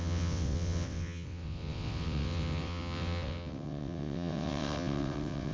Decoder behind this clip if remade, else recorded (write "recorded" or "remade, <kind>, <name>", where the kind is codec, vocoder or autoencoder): remade, vocoder, WaveNeXt